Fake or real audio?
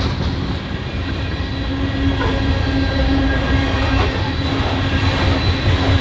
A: real